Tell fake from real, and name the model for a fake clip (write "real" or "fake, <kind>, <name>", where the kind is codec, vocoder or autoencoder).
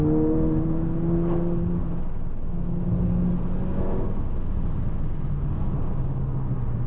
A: real